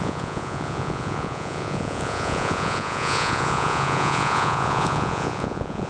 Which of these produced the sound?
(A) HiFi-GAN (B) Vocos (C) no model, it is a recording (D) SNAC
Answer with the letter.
B